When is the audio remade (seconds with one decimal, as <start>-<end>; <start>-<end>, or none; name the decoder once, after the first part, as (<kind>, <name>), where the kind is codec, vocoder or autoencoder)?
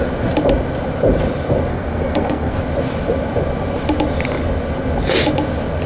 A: 1.7-2.6 (codec, SNAC)